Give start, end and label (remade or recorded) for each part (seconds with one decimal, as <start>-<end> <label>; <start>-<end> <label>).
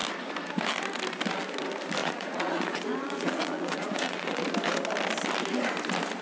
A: 0.0-2.0 recorded; 2.0-4.4 remade; 4.4-6.2 recorded